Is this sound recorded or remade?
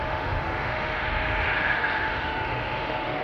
remade